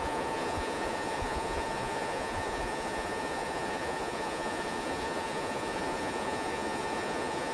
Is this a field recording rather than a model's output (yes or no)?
no